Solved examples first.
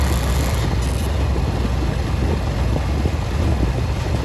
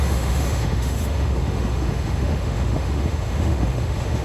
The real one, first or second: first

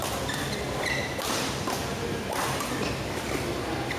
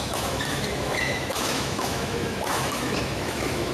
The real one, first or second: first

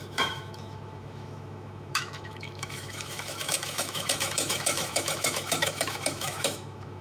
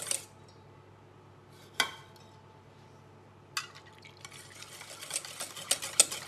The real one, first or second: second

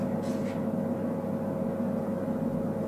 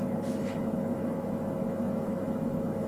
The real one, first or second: first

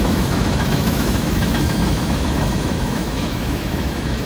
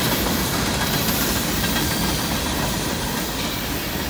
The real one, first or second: second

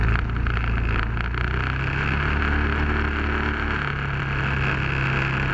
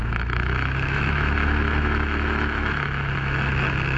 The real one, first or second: first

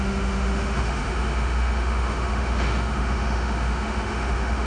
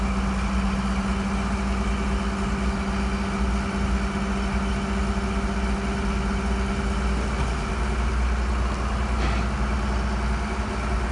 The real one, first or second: second